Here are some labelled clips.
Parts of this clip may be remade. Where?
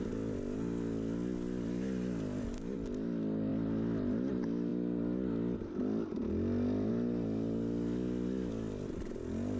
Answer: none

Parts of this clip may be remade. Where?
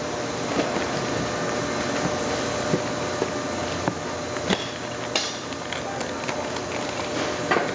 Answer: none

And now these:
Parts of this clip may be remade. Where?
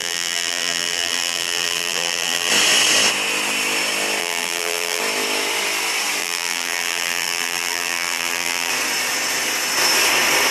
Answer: 0.0-2.5 (vocoder, BigVGAN v2); 4.2-5.0; 6.2-8.7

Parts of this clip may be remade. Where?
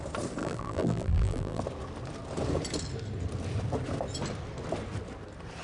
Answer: 0.4-1.6 (vocoder, BigVGAN v2)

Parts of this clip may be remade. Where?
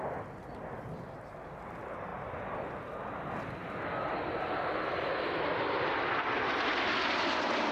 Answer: none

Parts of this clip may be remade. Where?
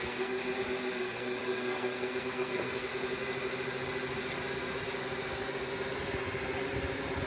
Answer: 0.0-0.4 (codec, SNAC); 1.0-2.9